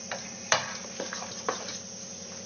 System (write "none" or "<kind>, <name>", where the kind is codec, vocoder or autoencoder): vocoder, BigVGAN v2